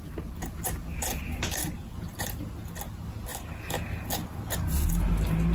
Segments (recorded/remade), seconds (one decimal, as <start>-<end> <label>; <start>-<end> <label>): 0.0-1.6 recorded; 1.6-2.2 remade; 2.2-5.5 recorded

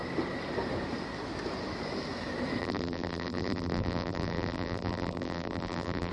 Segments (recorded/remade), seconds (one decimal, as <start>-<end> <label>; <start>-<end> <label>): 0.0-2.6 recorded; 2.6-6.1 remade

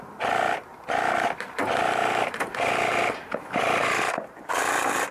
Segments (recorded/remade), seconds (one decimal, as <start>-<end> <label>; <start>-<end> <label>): 0.0-3.8 recorded; 3.8-5.1 remade

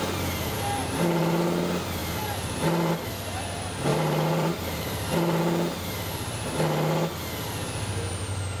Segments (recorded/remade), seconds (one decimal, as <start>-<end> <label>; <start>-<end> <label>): 0.0-0.8 recorded; 0.8-1.6 remade; 1.6-3.9 recorded; 3.9-5.9 remade; 5.9-8.6 recorded